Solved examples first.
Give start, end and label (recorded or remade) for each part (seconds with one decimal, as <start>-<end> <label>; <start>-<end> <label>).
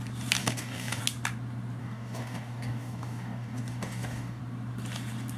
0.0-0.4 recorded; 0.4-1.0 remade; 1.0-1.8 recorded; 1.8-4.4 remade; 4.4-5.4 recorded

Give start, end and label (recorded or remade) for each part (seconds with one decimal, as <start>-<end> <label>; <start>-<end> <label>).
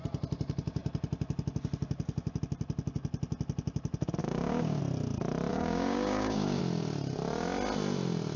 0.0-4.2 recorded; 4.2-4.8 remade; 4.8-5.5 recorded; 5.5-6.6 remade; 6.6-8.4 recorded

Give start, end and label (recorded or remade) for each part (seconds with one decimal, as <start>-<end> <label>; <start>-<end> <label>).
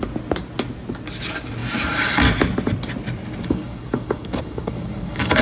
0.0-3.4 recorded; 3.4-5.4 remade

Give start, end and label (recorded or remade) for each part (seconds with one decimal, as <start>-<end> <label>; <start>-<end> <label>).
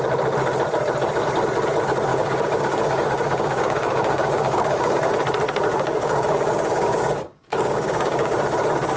0.0-2.1 recorded; 2.1-5.1 remade; 5.1-5.7 recorded; 5.7-8.3 remade; 8.3-9.0 recorded